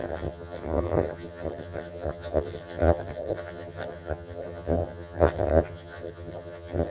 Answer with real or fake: fake